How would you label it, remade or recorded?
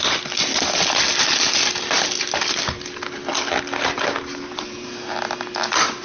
recorded